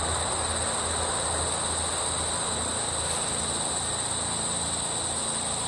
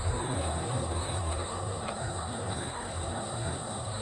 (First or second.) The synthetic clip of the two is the second